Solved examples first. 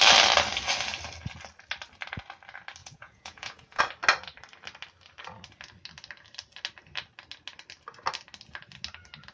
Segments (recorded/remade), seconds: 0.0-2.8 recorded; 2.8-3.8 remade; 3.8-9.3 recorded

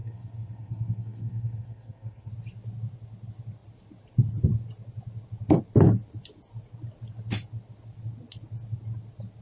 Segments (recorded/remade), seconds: 0.0-2.3 remade; 2.3-9.4 recorded

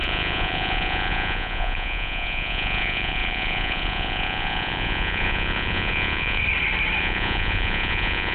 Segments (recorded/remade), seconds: 0.0-6.4 remade; 6.4-7.0 recorded; 7.0-8.3 remade

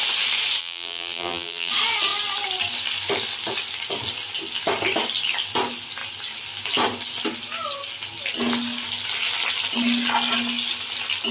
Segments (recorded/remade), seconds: 0.0-0.6 recorded; 0.6-1.7 remade; 1.7-11.3 recorded